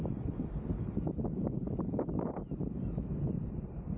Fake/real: fake